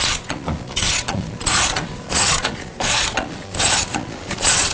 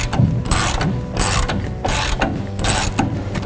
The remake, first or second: first